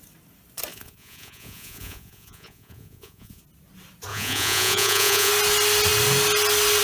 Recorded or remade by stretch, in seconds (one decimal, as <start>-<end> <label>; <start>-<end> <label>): 0.0-0.7 recorded; 0.7-3.4 remade; 3.4-4.1 recorded; 4.1-5.3 remade; 5.3-6.8 recorded